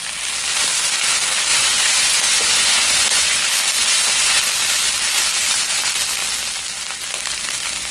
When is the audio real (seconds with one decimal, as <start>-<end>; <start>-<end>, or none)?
0.0-1.5; 3.4-3.8; 4.4-7.9